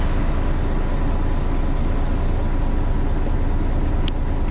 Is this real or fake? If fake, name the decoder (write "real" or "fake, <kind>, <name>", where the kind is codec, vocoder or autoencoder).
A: real